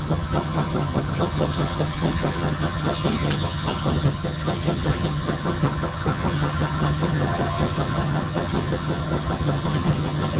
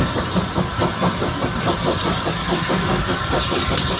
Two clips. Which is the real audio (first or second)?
second